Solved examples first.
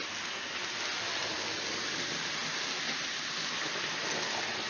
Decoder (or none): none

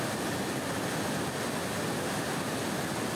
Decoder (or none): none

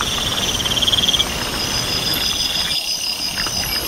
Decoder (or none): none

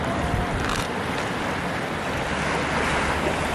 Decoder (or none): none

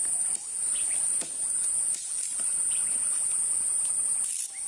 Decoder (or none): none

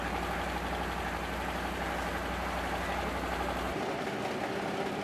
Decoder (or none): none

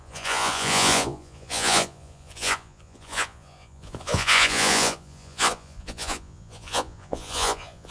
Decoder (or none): vocoder, Vocos